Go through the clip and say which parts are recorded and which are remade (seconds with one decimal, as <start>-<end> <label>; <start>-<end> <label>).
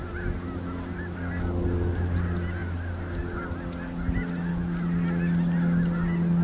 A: 0.0-6.4 recorded